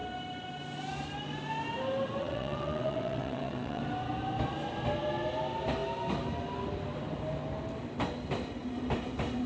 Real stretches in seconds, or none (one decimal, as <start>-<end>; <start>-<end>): 0.0-2.2; 3.8-9.5